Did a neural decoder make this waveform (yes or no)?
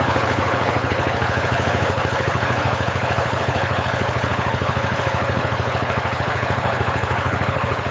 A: yes